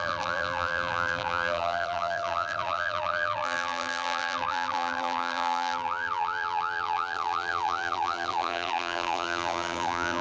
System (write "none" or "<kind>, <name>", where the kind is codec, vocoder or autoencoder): vocoder, BigVGAN v2